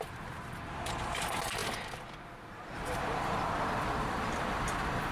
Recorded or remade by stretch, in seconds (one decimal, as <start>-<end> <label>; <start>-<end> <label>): 0.0-5.1 remade